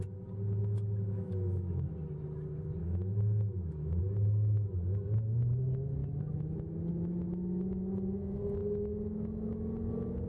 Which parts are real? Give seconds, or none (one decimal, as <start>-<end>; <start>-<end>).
0.0-0.6; 1.9-2.8; 4.0-10.3